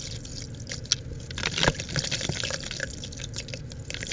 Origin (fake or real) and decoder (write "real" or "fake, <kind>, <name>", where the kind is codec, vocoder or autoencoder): real